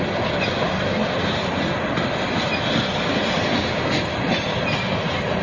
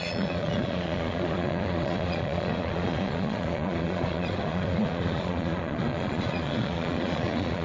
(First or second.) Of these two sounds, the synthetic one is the second